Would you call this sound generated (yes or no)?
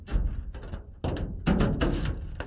no